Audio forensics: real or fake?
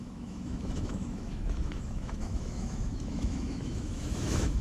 fake